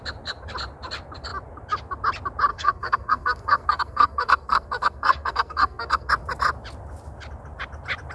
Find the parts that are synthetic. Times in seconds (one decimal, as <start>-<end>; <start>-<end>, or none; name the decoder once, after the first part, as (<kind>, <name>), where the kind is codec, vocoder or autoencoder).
2.5-6.1 (codec, SNAC)